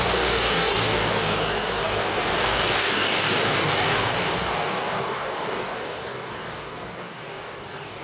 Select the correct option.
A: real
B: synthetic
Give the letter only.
B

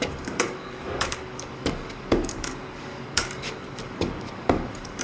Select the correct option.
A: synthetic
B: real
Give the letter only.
A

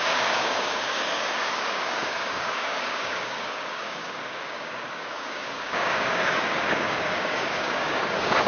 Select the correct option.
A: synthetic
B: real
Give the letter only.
A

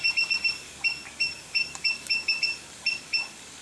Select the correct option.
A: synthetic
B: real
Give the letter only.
A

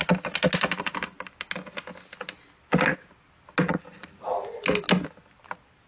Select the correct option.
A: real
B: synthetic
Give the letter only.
A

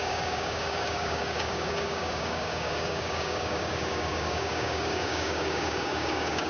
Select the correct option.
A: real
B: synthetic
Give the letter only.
B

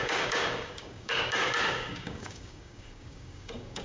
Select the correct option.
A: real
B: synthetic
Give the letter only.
B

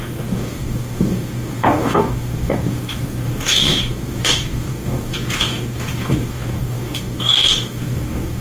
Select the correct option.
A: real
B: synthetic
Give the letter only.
B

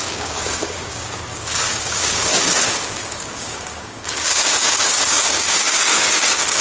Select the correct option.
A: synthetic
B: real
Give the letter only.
A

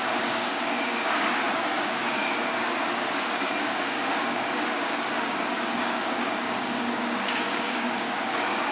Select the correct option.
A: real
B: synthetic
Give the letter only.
B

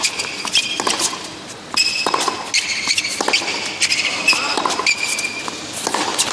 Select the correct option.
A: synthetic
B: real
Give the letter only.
B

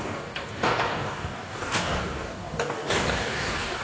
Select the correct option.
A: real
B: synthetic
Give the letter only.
B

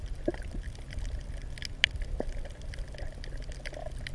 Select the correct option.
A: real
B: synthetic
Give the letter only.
A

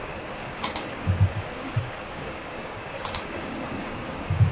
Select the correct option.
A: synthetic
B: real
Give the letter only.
A